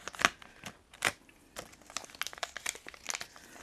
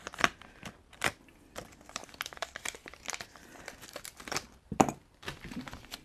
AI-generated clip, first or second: second